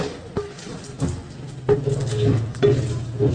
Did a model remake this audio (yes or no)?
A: no